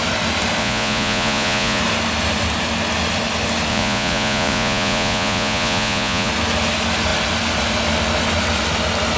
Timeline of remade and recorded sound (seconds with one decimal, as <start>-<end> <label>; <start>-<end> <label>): 0.0-0.6 recorded; 0.6-1.8 remade; 1.8-3.7 recorded; 3.7-6.3 remade; 6.3-9.2 recorded